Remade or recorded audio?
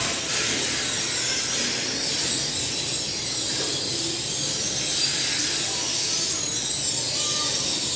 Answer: recorded